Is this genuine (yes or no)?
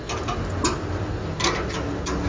yes